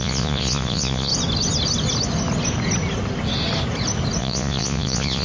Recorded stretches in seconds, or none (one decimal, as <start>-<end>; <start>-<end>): 1.1-4.2